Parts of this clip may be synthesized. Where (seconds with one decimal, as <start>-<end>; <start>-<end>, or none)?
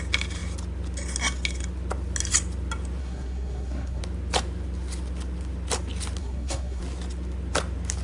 3.0-4.0; 6.2-6.8